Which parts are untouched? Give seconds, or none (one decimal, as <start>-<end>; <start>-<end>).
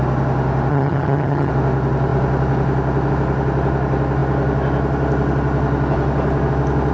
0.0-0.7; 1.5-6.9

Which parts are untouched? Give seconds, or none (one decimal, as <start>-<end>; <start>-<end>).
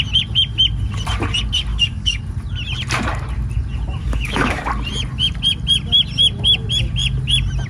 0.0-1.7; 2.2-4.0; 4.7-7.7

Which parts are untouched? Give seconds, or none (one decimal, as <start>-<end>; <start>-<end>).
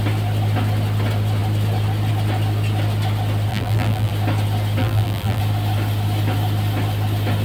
0.0-3.5; 4.1-4.8; 5.4-7.4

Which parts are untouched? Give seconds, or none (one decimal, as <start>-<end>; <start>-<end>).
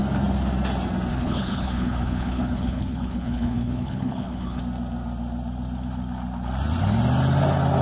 0.0-1.1; 4.6-7.8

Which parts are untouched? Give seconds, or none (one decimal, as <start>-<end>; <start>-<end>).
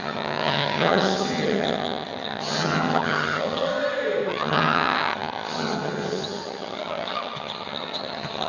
3.7-4.3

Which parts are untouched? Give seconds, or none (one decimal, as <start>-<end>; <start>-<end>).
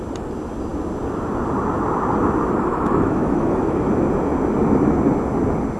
0.0-2.7; 3.9-5.8